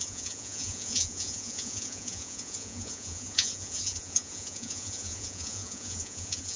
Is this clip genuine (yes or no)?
no